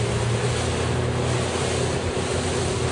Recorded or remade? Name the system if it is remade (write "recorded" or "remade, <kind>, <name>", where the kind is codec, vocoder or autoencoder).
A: recorded